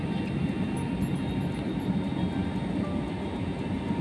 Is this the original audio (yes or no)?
yes